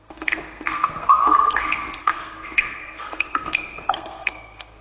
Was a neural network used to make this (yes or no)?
yes